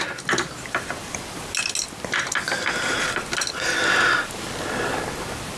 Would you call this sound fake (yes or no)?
no